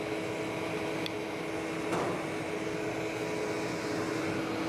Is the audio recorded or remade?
recorded